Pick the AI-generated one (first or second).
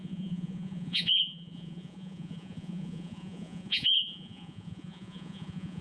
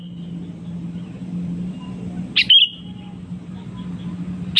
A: first